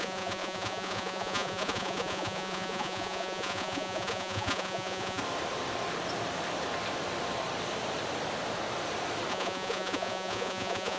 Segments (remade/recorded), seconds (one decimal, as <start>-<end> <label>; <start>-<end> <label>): 0.0-5.2 remade; 5.2-9.3 recorded; 9.3-11.0 remade

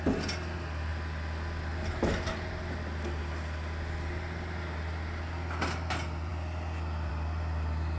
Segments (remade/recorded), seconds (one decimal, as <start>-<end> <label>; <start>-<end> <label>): 0.0-8.0 recorded